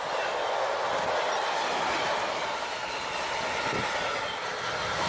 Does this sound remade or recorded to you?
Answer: recorded